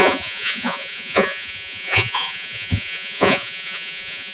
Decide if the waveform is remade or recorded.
remade